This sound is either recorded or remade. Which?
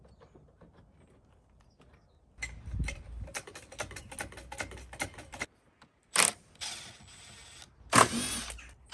recorded